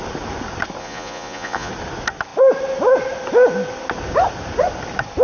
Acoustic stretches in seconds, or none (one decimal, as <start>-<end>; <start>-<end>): 0.0-0.8; 1.7-5.2